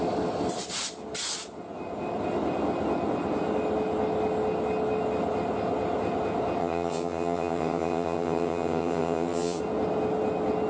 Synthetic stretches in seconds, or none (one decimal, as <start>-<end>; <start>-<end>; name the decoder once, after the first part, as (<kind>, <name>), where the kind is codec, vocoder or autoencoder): 6.6-9.6 (vocoder, HiFi-GAN)